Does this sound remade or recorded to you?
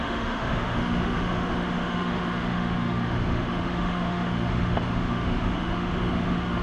remade